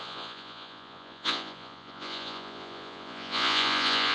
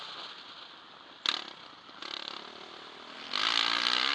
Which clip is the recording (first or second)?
second